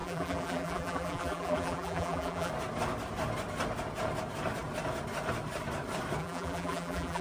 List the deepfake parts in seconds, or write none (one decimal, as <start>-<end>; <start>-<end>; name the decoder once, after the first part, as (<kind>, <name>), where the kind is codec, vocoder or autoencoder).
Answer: 0.0-2.5 (vocoder, BigVGAN v2); 6.2-7.2